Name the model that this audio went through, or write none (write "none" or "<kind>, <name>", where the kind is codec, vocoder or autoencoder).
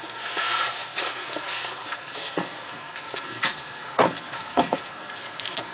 codec, SNAC